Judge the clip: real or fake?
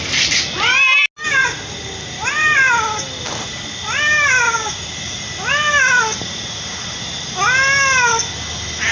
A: real